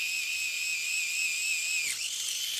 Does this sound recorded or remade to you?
recorded